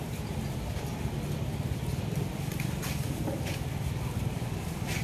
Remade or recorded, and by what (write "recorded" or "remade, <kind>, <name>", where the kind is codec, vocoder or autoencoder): remade, vocoder, BigVGAN v2